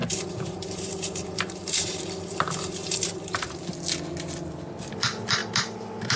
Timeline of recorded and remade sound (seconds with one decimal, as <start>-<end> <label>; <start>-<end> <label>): 0.0-3.7 remade; 3.7-6.2 recorded